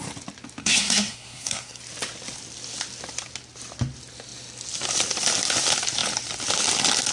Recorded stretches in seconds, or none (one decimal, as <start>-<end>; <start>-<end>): 0.0-0.6; 1.8-7.1

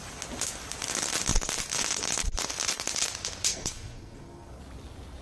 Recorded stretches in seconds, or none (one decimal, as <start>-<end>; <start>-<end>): 0.0-3.5; 4.6-5.2

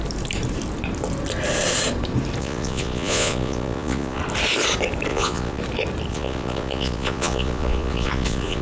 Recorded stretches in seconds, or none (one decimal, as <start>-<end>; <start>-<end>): 0.0-2.4; 4.2-5.1; 5.6-6.1

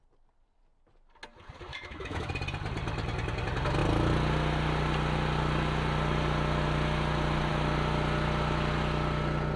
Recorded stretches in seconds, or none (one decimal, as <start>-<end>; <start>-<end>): 0.0-1.7; 2.3-9.6